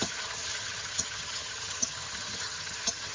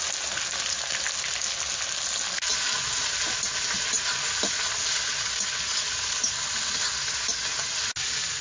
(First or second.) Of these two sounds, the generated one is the first